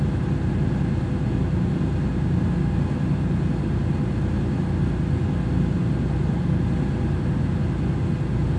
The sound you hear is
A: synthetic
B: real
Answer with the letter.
B